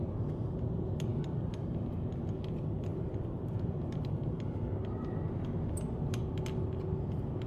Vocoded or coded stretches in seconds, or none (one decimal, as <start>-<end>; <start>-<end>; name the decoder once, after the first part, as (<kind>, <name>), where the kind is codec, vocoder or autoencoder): none